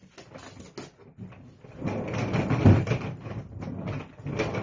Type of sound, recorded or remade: recorded